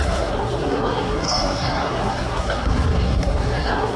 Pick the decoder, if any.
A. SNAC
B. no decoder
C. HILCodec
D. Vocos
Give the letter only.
A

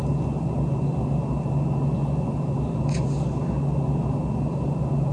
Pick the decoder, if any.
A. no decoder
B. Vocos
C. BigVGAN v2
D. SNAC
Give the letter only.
A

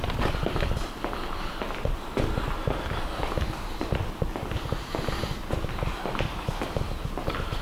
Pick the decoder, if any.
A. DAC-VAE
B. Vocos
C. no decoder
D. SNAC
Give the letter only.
C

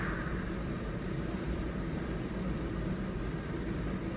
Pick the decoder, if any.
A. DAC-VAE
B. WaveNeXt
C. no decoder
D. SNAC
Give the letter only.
C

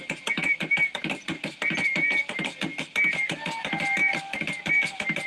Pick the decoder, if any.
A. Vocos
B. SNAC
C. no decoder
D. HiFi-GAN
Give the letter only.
C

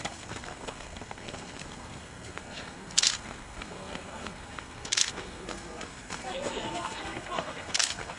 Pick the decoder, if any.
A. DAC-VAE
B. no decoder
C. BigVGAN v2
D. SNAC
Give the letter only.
D